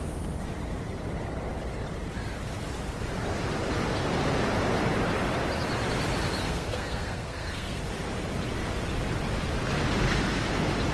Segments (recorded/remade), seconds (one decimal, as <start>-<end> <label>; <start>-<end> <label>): 0.0-6.4 recorded; 6.4-7.8 remade; 7.8-10.9 recorded